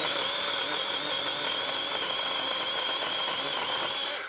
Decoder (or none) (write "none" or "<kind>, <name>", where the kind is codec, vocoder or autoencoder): none